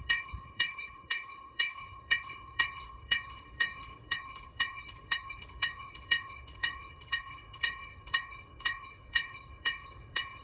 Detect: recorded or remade remade